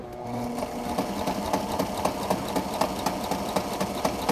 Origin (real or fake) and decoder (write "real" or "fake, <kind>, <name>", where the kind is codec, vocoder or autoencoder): real